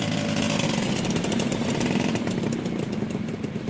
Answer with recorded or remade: recorded